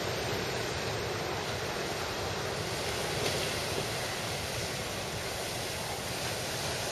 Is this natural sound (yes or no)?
yes